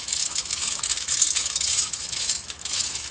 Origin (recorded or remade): remade